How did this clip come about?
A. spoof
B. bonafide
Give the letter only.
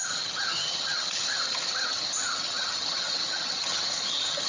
A